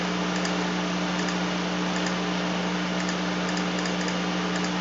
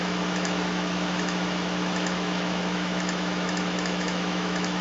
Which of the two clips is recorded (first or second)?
first